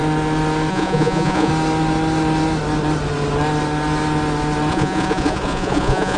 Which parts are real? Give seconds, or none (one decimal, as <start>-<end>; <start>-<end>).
0.0-0.7; 1.5-4.7